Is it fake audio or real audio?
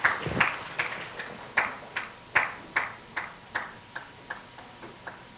real